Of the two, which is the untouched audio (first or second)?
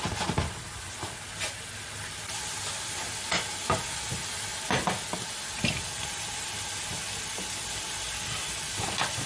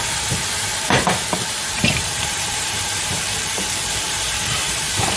first